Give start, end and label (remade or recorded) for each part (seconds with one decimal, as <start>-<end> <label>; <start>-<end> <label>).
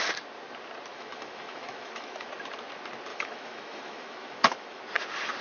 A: 0.0-0.9 recorded; 0.9-2.3 remade; 2.3-3.1 recorded; 3.1-4.8 remade; 4.8-5.4 recorded